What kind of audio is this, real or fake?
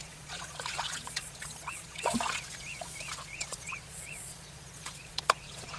fake